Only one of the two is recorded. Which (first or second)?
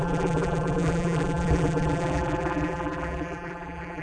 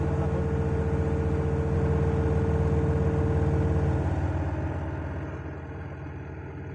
second